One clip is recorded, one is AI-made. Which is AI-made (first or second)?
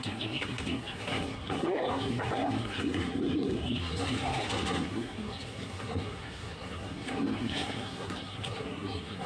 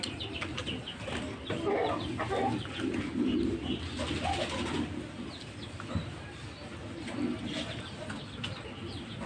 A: first